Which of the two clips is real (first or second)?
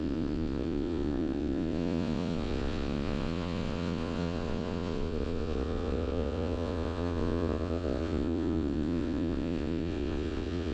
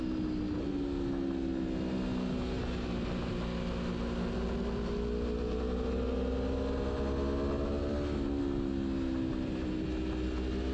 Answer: second